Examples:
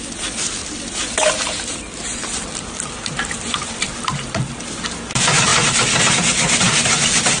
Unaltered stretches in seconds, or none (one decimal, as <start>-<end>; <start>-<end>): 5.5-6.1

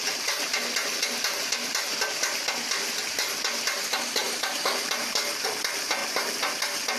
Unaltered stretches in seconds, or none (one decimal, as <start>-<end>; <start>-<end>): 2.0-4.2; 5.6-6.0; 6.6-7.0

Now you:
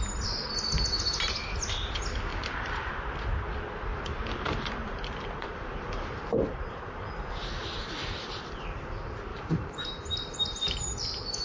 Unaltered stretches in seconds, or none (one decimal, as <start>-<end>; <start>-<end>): 0.0-2.3; 2.9-3.9; 7.1-7.6; 8.2-9.3; 10.0-11.4

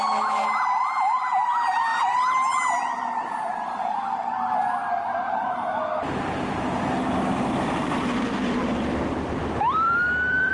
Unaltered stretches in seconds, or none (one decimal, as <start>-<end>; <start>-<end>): 0.0-7.3

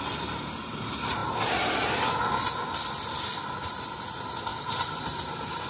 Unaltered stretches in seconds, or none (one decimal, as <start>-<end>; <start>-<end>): 0.0-1.2; 1.9-4.5

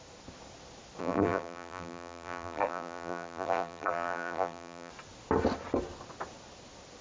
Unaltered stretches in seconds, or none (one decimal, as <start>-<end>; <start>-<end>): 0.0-1.0; 4.9-7.0